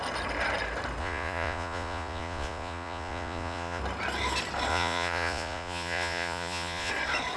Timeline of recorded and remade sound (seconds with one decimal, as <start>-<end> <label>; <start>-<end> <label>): 0.0-1.0 recorded; 1.0-3.8 remade; 3.8-4.7 recorded; 4.7-6.9 remade; 6.9-7.4 recorded

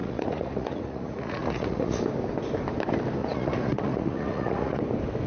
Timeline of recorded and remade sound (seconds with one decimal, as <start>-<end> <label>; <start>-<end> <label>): 0.0-2.0 remade; 2.0-3.2 recorded; 3.2-4.8 remade; 4.8-5.3 recorded

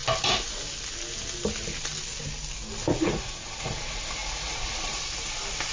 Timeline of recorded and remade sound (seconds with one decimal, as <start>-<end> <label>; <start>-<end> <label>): 0.0-2.9 recorded; 2.9-3.7 remade; 3.7-4.2 recorded; 4.2-5.0 remade; 5.0-5.7 recorded

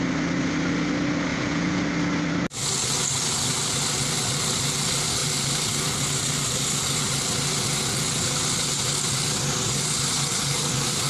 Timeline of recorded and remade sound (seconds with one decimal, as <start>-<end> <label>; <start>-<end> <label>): 0.0-1.3 recorded; 1.3-1.8 remade; 1.8-11.1 recorded